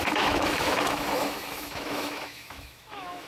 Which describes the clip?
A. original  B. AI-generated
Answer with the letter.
B